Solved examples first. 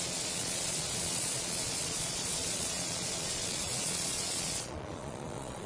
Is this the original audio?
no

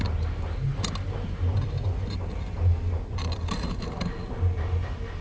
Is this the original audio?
yes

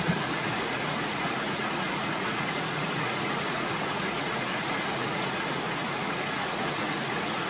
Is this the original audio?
no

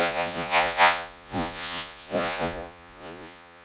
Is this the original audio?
no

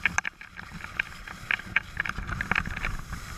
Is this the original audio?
yes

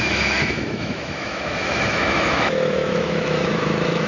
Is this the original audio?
no